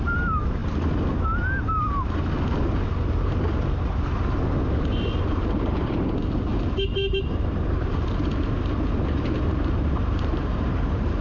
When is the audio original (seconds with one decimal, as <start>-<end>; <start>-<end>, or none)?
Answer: 0.6-5.2; 6.5-7.1